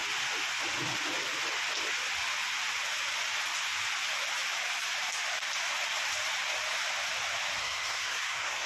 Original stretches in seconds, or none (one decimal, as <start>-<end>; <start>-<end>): 0.0-7.6